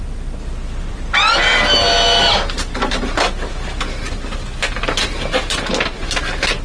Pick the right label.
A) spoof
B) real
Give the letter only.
B